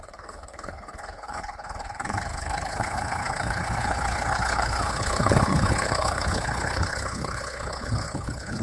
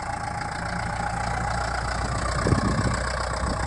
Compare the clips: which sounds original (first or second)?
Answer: second